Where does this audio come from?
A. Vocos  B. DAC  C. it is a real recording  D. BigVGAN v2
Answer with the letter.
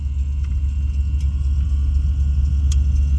C